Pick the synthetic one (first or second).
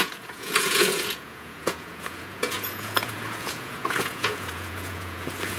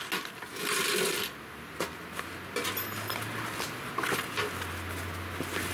first